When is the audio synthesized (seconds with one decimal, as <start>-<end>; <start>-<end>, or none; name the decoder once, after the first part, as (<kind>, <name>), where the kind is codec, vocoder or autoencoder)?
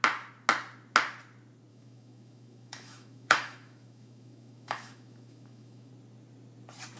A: 1.7-5.9 (autoencoder, DAC-VAE)